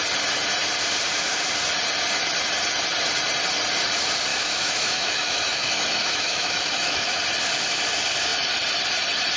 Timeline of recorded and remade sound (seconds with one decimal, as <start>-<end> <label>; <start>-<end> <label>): 0.0-4.3 recorded; 4.3-7.2 remade; 7.2-9.4 recorded